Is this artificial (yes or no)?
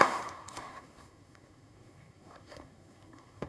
yes